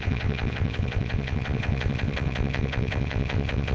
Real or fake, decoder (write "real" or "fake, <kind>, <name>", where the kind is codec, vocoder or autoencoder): fake, vocoder, WaveNeXt